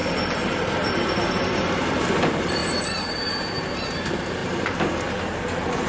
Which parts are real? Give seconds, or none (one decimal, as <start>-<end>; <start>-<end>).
0.0-0.5